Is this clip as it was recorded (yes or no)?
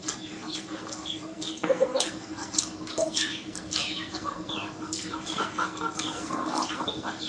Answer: no